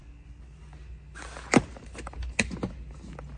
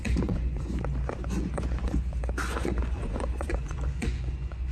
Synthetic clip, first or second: second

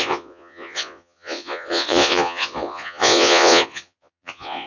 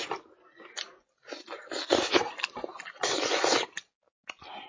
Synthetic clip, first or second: first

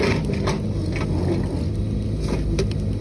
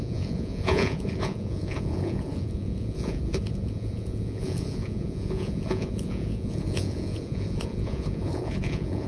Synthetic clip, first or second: second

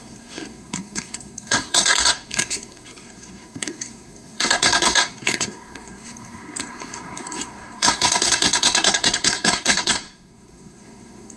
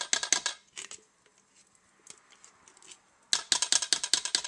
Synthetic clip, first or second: first